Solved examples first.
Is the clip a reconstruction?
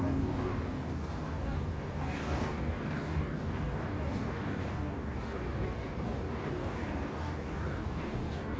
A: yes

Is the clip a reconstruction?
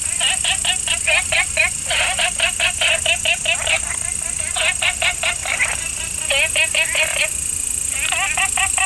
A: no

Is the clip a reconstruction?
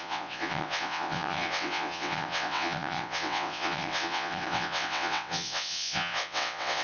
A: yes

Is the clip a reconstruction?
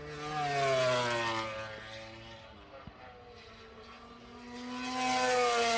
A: no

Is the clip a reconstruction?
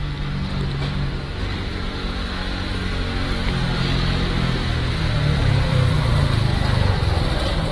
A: no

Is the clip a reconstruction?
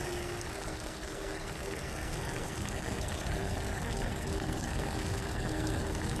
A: yes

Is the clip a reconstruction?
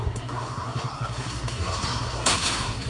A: yes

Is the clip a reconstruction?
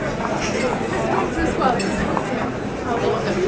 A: no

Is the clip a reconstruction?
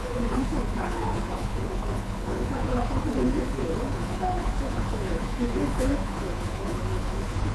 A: yes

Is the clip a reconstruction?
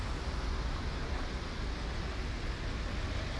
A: no